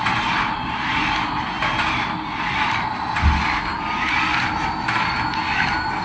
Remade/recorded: recorded